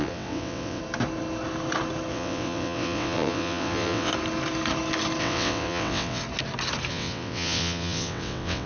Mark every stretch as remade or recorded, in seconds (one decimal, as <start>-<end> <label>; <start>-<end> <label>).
0.0-0.8 remade; 0.8-2.1 recorded; 2.1-4.1 remade; 4.1-5.2 recorded; 5.2-6.2 remade; 6.2-6.9 recorded; 6.9-8.7 remade